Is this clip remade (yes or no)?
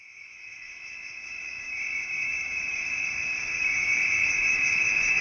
yes